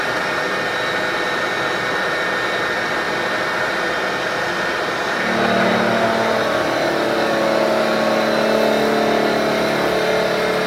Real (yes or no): yes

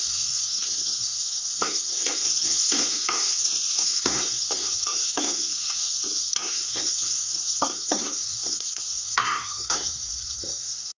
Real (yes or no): no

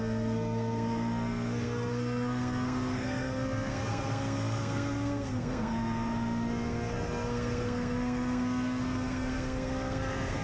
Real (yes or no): no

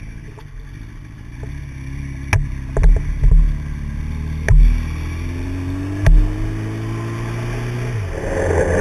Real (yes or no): yes